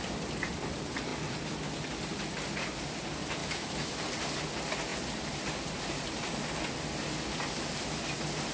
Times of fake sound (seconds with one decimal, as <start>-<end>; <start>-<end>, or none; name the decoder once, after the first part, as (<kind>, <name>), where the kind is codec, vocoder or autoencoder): 3.4-4.0 (autoencoder, DAC-VAE)